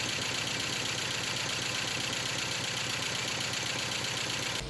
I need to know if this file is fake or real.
real